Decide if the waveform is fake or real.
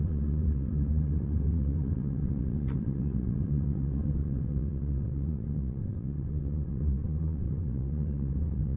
fake